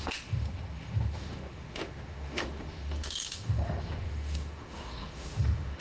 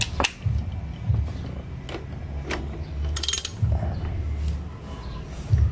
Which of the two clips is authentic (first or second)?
second